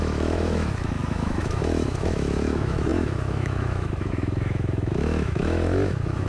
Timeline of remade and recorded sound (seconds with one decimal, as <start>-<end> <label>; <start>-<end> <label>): 0.0-6.3 remade